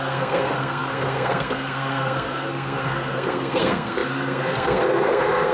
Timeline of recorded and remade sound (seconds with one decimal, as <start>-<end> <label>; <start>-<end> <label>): 0.0-5.5 remade